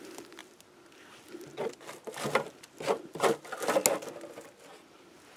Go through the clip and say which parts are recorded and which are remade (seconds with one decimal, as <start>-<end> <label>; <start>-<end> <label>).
0.0-5.4 recorded